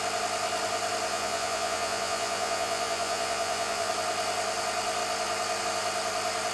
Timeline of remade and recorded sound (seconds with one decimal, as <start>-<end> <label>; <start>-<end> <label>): 0.0-1.1 recorded; 1.1-3.9 remade; 3.9-6.5 recorded